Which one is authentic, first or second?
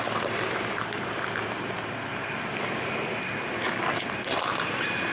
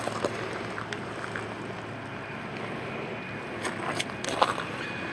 second